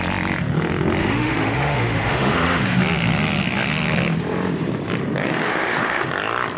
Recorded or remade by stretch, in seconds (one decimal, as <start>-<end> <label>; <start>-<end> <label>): 0.0-1.0 recorded; 1.0-2.8 remade; 2.8-5.2 recorded; 5.2-6.1 remade; 6.1-6.6 recorded